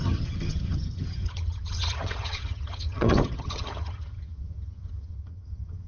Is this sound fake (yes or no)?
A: yes